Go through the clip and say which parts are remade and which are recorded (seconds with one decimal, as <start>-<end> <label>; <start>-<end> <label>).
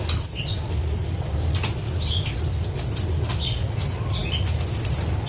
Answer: 0.0-5.3 recorded